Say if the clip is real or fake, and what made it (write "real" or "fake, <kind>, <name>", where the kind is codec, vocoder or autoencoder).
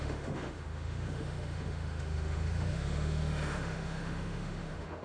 fake, autoencoder, DAC-VAE